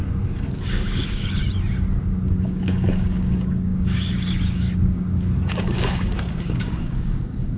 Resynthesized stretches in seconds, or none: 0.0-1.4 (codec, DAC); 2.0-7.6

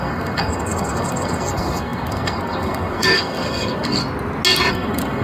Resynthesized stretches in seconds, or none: 0.0-4.0 (codec, SNAC); 4.7-5.2

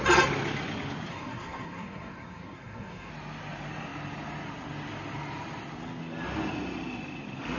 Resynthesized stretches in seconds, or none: 1.1-3.1 (codec, SNAC)